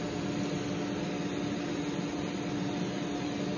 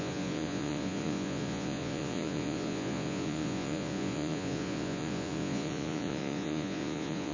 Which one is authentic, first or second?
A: first